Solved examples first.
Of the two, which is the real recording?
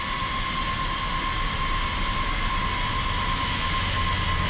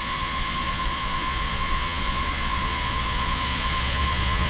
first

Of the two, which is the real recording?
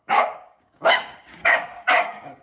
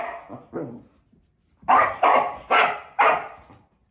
second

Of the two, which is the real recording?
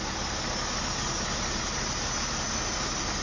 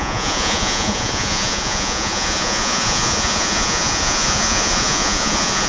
first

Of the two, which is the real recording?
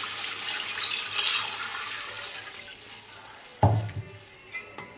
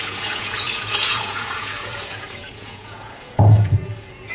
first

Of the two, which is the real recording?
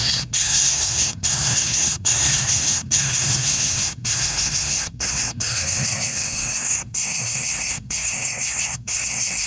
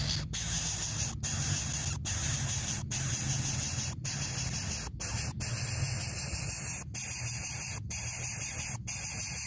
second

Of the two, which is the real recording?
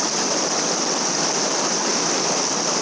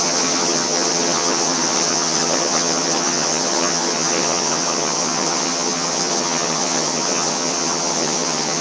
first